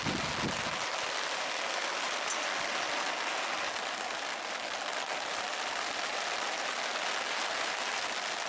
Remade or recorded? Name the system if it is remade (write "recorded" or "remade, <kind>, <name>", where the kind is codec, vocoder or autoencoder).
recorded